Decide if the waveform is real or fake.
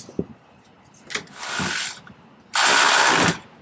real